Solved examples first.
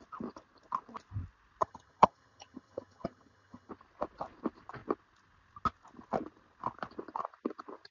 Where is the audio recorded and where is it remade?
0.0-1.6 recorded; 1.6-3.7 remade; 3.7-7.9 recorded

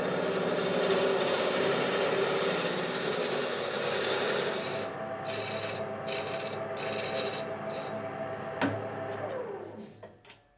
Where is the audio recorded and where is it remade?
0.0-10.6 recorded

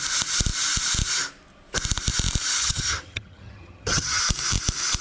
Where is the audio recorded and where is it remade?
0.0-2.6 recorded; 2.6-4.2 remade; 4.2-5.0 recorded